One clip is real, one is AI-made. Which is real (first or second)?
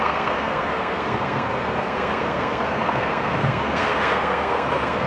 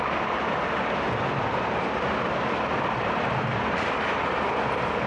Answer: second